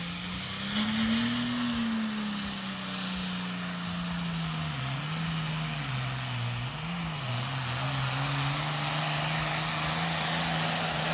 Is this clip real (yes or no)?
yes